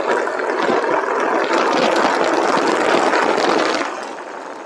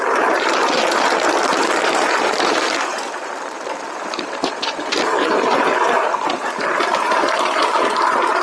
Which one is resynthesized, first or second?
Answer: second